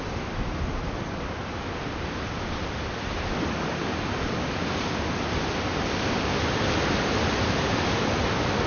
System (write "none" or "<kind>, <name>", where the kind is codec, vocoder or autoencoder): none